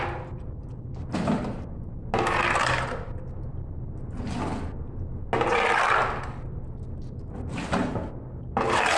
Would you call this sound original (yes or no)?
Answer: yes